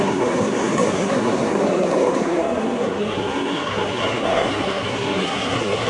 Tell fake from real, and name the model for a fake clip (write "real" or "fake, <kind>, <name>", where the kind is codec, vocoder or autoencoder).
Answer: fake, codec, SNAC